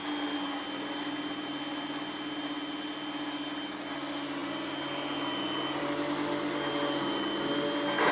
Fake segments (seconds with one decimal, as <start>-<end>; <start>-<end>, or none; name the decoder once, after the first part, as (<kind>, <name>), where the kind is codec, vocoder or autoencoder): none